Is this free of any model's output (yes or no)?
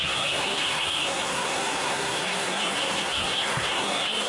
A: no